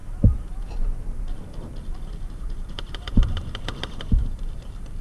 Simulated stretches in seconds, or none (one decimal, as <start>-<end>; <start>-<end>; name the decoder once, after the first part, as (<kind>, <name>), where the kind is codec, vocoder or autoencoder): 2.3-5.0 (vocoder, BigVGAN v2)

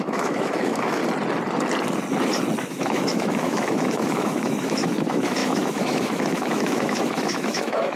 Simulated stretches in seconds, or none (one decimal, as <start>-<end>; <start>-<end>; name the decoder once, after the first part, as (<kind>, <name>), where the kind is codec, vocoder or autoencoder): 0.0-1.0 (autoencoder, DAC-VAE); 2.6-8.0